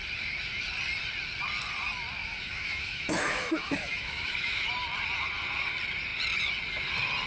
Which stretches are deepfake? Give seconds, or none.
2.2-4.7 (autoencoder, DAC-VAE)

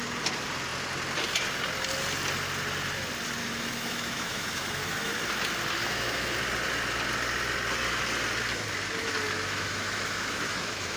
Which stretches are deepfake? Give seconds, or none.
3.4-5.1 (autoencoder, DAC-VAE); 5.8-6.3; 9.0-11.0

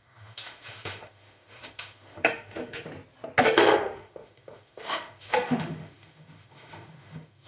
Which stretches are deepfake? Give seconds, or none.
0.0-2.9 (autoencoder, DAC-VAE); 3.4-7.5

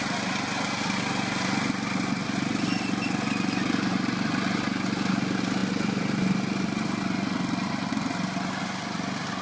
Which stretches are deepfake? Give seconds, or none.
none

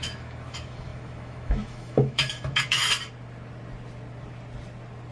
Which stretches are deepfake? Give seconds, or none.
0.0-2.8 (autoencoder, DAC-VAE)

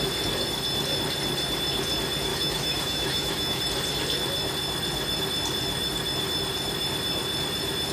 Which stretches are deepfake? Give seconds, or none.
2.3-3.6 (autoencoder, DAC-VAE)

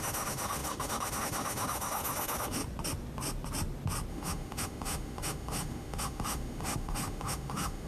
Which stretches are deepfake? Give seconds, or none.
0.0-2.6 (autoencoder, DAC-VAE); 4.1-7.9

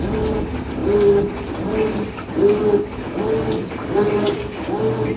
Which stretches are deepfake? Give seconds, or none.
none